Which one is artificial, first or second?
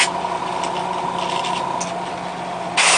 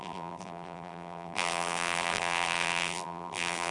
second